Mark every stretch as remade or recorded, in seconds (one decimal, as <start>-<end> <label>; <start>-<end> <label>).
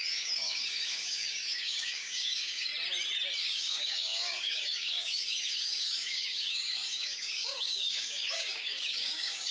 0.0-2.7 remade; 2.7-3.4 recorded; 3.4-9.5 remade